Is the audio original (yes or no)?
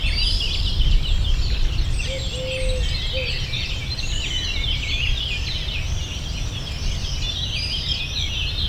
yes